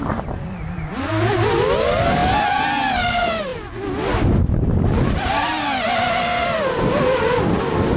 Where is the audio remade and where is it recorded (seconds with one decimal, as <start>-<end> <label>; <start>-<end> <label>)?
0.0-8.0 recorded